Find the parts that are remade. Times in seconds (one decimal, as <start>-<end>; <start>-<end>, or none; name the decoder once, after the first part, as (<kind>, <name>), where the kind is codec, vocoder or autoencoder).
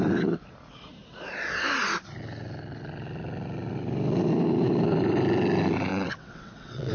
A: 5.9-6.9 (vocoder, WaveNeXt)